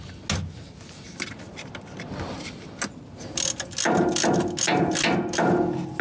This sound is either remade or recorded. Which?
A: recorded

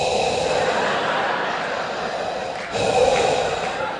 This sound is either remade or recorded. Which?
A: recorded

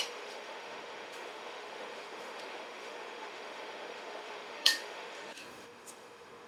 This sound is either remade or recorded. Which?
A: remade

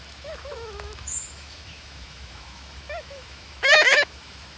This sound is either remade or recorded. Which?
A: remade